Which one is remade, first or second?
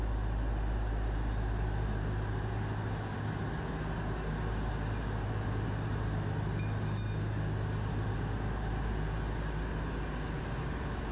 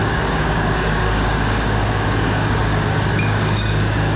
second